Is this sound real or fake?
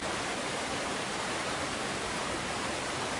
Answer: fake